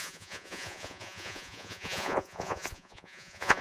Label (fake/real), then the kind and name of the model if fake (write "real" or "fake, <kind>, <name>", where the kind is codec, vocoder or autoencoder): fake, vocoder, Vocos